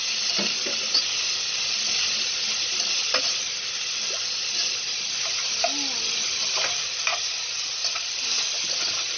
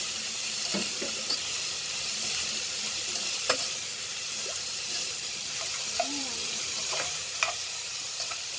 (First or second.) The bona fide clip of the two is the first